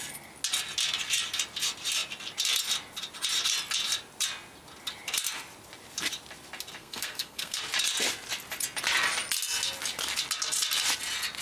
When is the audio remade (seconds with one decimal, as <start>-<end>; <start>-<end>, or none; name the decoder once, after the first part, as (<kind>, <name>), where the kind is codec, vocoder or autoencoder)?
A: 6.8-7.6 (codec, SNAC)